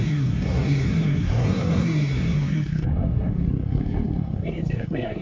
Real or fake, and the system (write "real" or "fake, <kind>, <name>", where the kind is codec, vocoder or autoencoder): fake, codec, SNAC